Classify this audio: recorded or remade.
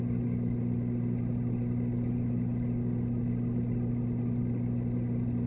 recorded